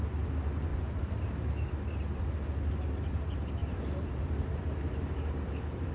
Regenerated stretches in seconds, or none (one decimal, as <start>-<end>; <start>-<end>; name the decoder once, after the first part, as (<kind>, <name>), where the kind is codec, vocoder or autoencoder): 0.7-1.3 (vocoder, BigVGAN v2); 3.6-5.9